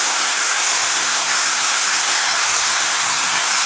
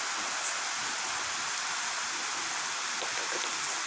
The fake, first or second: first